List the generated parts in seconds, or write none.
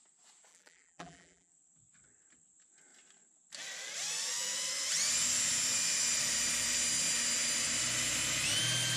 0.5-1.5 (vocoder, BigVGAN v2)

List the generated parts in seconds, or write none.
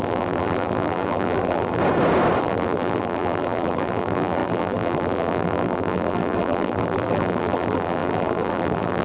0.0-1.8 (vocoder, BigVGAN v2); 2.4-9.0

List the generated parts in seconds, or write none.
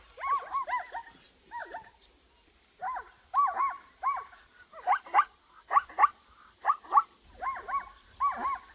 1.6-2.1 (vocoder, BigVGAN v2); 2.8-6.8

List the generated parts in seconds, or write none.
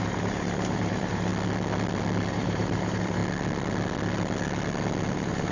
0.0-1.3 (vocoder, BigVGAN v2); 2.3-3.2; 5.1-5.5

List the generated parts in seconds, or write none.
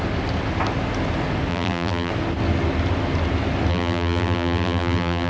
1.5-2.1 (vocoder, BigVGAN v2); 3.7-5.3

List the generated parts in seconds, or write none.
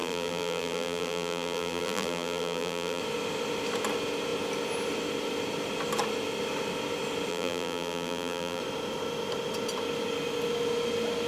0.0-3.0 (vocoder, BigVGAN v2); 7.3-8.6